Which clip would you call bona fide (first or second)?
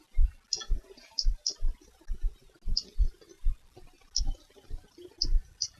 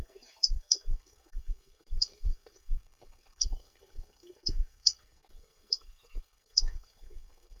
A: first